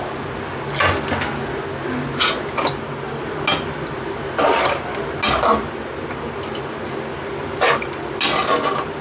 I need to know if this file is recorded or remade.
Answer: recorded